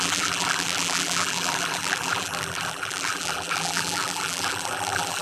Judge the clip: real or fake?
fake